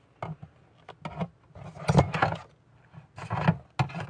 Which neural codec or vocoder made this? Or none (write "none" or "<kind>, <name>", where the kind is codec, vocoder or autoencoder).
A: none